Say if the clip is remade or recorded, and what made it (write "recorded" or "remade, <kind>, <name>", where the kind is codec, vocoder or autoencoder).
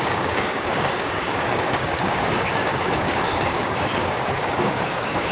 remade, codec, DAC